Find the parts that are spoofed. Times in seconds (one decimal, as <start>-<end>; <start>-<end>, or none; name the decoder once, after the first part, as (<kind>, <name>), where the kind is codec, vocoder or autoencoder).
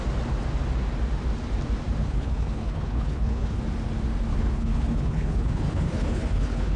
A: 2.0-3.6 (codec, HILCodec); 4.3-6.8